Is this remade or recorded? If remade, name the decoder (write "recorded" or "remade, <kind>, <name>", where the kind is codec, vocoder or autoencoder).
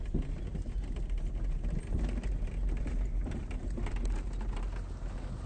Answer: recorded